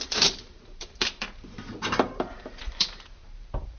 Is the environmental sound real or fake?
fake